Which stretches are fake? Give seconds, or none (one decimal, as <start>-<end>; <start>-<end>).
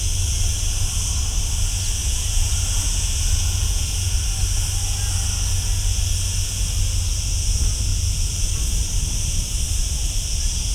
2.0-4.1; 7.9-8.5